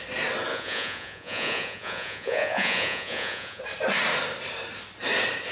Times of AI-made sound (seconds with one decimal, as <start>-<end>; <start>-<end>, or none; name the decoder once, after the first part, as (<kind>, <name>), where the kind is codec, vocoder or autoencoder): 0.5-3.6 (vocoder, Vocos)